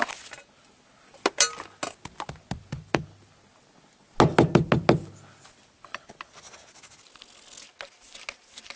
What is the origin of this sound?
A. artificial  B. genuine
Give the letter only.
B